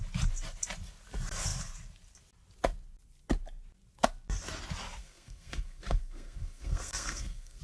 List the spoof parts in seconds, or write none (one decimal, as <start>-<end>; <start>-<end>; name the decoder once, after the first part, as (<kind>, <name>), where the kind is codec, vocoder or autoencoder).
5.0-7.6 (codec, SNAC)